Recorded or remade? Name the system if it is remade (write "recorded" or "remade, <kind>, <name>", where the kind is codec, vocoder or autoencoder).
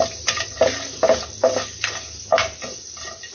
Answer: recorded